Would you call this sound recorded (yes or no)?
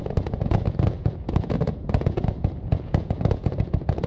no